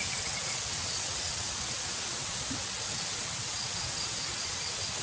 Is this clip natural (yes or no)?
no